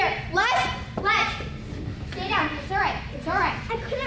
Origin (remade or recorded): recorded